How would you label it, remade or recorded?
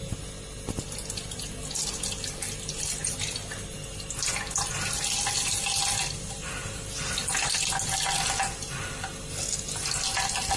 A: recorded